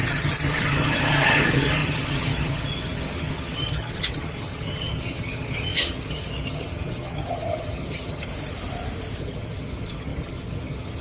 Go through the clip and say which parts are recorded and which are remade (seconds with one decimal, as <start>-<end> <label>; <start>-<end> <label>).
0.0-8.3 remade; 8.3-9.2 recorded; 9.2-11.0 remade